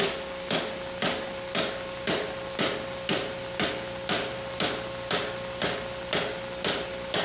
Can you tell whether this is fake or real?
real